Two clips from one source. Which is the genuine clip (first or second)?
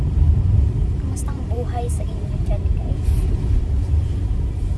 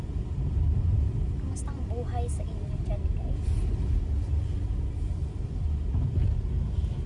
second